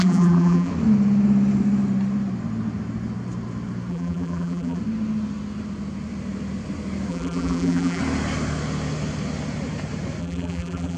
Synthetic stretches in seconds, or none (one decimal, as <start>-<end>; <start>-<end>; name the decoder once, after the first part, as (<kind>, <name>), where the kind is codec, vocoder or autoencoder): 0.0-0.7 (vocoder, BigVGAN v2); 3.9-4.8; 7.1-8.0; 10.2-11.0